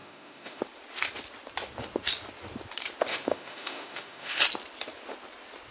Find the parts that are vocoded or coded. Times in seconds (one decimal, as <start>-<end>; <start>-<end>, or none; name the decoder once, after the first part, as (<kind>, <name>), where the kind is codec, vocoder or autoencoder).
0.0-0.6 (autoencoder, DAC-VAE); 3.1-4.4